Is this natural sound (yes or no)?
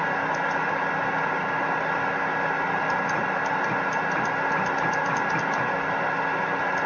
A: yes